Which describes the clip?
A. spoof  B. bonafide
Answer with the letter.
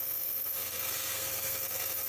A